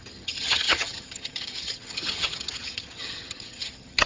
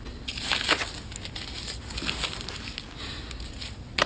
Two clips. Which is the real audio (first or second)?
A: second